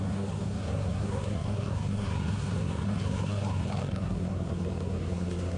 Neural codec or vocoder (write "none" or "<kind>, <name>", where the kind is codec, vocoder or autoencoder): codec, SNAC